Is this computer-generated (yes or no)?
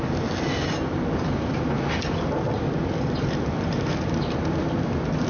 no